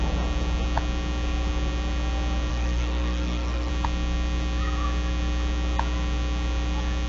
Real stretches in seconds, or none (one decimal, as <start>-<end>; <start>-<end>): 0.0-2.5; 3.7-7.1